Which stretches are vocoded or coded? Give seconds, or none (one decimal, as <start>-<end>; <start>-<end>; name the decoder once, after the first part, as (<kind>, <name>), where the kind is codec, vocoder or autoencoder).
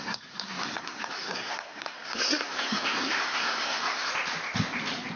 0.0-4.1 (codec, SNAC)